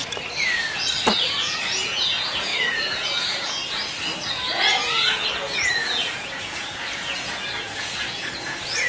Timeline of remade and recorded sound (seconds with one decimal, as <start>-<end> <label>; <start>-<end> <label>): 0.0-1.3 recorded; 1.3-3.6 remade; 3.6-4.3 recorded; 4.3-8.9 remade